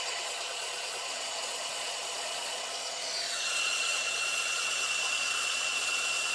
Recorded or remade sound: remade